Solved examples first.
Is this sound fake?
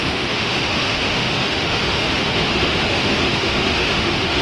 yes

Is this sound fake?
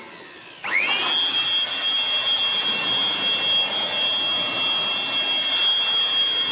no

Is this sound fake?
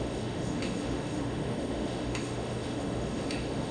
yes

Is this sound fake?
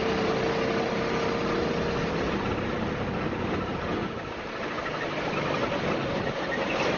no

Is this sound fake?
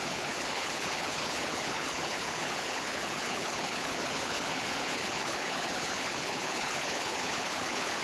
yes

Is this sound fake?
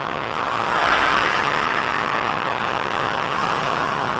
yes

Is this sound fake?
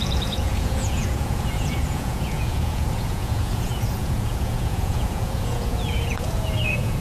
yes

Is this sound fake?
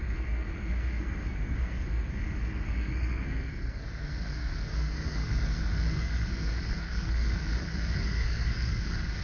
yes